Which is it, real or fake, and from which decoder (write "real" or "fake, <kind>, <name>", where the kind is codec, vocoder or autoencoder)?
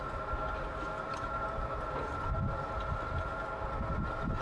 real